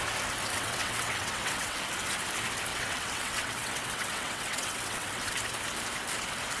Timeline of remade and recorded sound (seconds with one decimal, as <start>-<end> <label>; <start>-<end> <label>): 0.0-0.5 recorded; 0.5-1.8 remade; 1.8-2.7 recorded; 2.7-5.3 remade; 5.3-6.6 recorded